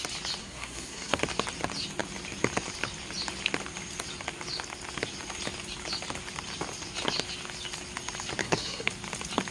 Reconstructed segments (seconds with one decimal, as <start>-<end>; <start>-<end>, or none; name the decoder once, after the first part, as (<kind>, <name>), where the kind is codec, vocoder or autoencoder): 0.4-1.2 (codec, SNAC); 8.4-8.9